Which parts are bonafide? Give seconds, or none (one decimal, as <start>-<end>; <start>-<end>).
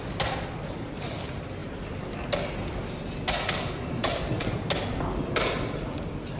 0.0-6.4